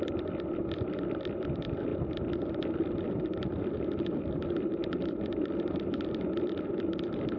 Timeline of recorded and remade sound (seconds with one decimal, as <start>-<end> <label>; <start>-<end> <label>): 0.0-1.9 remade; 1.9-2.5 recorded; 2.5-7.4 remade